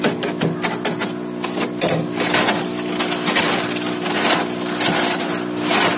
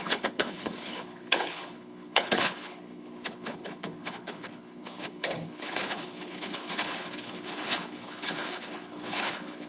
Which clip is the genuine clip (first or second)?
first